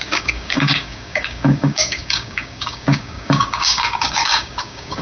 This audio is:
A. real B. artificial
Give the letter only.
B